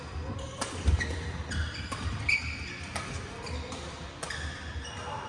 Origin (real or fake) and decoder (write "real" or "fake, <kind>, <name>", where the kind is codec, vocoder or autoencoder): real